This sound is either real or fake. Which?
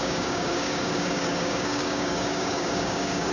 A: fake